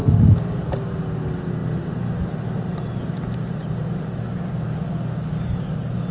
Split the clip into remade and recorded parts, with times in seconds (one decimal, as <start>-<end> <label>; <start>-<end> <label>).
0.0-6.1 recorded